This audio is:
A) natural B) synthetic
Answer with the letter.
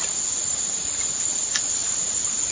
A